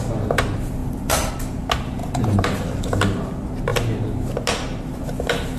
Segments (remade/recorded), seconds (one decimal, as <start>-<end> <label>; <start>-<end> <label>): 0.0-0.8 recorded; 0.8-1.3 remade; 1.3-2.0 recorded; 2.0-2.8 remade; 2.8-5.6 recorded